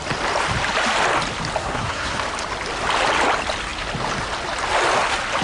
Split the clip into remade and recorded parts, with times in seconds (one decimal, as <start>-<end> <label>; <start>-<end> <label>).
0.0-1.6 recorded; 1.6-2.2 remade; 2.2-5.4 recorded